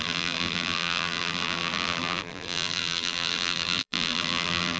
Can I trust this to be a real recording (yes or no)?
no